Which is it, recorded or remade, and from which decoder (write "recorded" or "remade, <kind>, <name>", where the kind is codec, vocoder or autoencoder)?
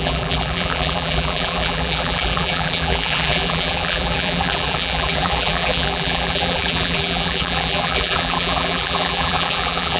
remade, vocoder, BigVGAN v2